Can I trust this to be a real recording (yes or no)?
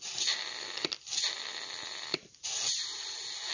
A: yes